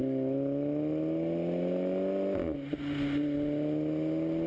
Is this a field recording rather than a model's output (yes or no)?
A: yes